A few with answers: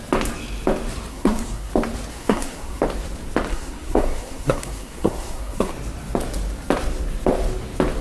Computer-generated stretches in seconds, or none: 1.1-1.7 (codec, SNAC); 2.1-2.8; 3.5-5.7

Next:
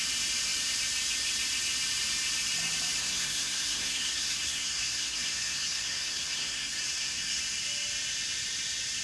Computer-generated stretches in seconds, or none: 3.0-7.4 (codec, SNAC)

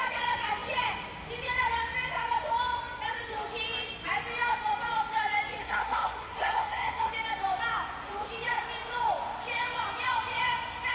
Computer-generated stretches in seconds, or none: 5.6-7.1 (codec, SNAC)

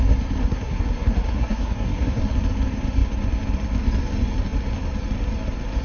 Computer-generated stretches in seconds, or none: 0.4-2.2 (codec, SNAC)

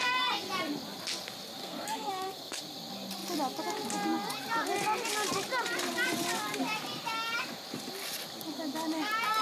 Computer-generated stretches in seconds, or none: 1.6-2.6 (codec, SNAC)

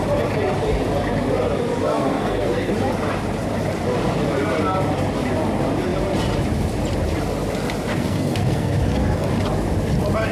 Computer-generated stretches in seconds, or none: 1.9-2.7 (codec, SNAC); 7.9-9.3